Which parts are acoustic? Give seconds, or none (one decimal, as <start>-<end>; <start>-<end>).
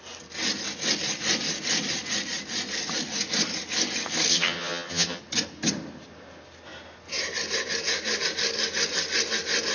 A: 0.0-4.3; 5.2-9.7